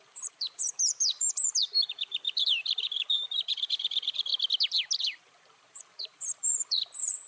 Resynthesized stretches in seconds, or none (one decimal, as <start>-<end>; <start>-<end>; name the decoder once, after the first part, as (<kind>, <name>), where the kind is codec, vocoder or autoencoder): 0.0-4.3 (vocoder, BigVGAN v2); 5.0-7.3